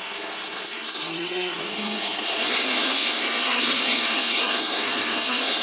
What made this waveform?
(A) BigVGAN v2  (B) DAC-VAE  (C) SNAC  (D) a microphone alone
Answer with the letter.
C